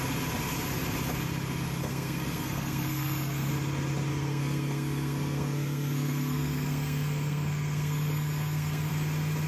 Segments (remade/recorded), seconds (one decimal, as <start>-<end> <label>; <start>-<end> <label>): 0.0-1.8 recorded; 1.8-3.5 remade; 3.5-4.1 recorded; 4.1-8.9 remade; 8.9-9.5 recorded